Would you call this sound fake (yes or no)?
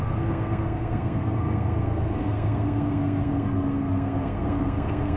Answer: yes